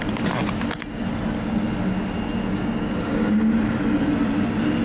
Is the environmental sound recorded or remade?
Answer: recorded